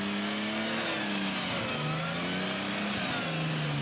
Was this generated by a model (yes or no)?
no